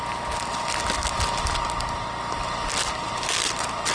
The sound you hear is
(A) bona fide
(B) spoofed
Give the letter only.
A